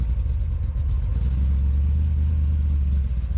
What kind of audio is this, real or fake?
real